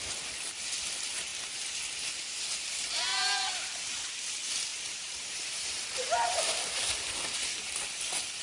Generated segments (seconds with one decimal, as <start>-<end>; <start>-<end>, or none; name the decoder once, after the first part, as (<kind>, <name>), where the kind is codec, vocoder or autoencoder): 3.1-4.1 (vocoder, BigVGAN v2); 4.7-7.1